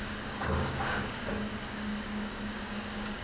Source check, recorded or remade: remade